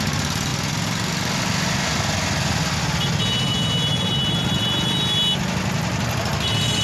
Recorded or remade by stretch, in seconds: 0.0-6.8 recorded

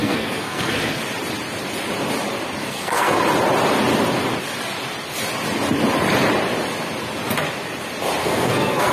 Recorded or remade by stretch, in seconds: 0.0-1.0 remade; 1.0-2.6 recorded; 2.6-3.2 remade; 3.2-8.2 recorded; 8.2-8.9 remade

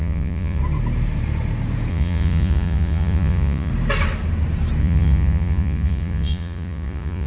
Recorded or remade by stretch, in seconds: 0.0-0.6 remade; 0.6-1.9 recorded; 1.9-3.7 remade; 3.7-4.8 recorded; 4.8-7.3 remade

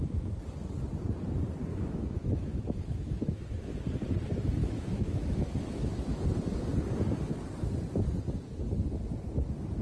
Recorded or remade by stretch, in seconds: 0.0-1.7 recorded; 1.7-3.7 remade; 3.7-4.6 recorded; 4.6-6.4 remade; 6.4-9.8 recorded

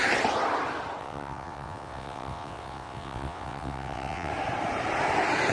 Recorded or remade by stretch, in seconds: 0.0-1.0 recorded; 1.0-4.3 remade; 4.3-5.5 recorded

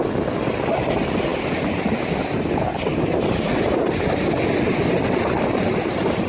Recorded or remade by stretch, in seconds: 0.0-6.3 recorded

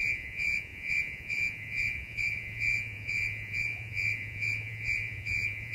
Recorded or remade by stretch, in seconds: 0.0-5.7 remade

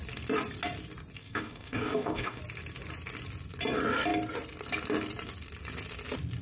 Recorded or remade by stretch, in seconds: 0.0-1.2 recorded; 1.2-2.4 remade; 2.4-6.4 recorded